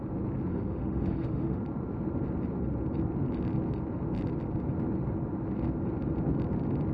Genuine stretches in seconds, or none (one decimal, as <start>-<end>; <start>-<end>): 0.0-0.5; 1.6-6.9